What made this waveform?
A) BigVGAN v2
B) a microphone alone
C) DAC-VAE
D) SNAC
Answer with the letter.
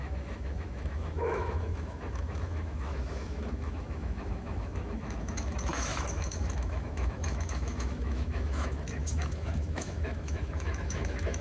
C